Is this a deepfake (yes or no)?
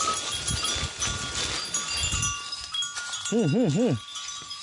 no